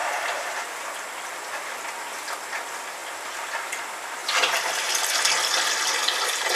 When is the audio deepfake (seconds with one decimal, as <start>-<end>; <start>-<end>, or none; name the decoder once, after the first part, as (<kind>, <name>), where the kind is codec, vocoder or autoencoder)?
0.0-0.6 (vocoder, BigVGAN v2); 4.2-5.2